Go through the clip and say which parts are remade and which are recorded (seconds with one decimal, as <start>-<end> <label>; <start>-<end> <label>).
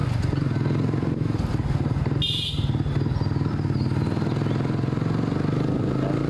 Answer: 0.0-6.3 recorded